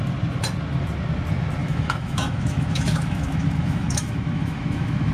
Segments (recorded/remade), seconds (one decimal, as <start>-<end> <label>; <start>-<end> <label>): 0.0-1.6 recorded; 1.6-5.1 remade